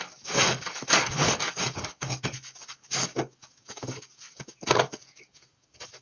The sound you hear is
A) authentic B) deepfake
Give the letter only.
B